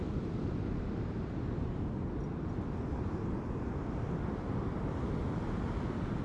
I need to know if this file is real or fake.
real